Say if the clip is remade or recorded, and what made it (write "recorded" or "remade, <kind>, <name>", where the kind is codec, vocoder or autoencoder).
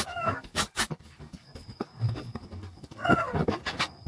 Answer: remade, codec, DAC